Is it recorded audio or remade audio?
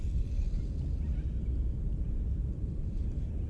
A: recorded